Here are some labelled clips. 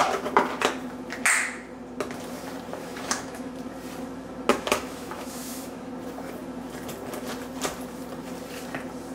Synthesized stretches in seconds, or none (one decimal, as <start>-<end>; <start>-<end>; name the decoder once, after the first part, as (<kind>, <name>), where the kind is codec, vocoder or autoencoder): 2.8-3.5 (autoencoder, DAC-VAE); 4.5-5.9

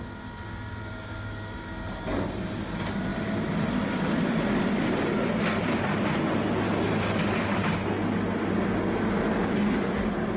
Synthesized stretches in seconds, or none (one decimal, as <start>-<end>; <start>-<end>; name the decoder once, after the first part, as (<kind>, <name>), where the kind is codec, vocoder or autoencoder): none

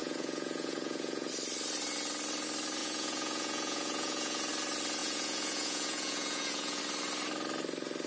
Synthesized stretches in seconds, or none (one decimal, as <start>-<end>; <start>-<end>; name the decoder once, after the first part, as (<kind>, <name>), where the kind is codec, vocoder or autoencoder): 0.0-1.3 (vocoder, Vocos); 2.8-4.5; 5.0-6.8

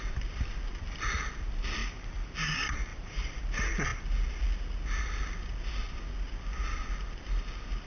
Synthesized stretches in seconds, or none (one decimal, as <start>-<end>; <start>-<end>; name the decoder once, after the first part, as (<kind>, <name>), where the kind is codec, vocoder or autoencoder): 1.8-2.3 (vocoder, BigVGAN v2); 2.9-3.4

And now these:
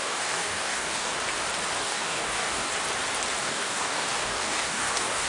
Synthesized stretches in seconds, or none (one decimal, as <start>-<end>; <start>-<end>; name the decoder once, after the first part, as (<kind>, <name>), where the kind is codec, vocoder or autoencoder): 0.0-1.1 (codec, DAC); 1.8-2.7; 3.4-5.3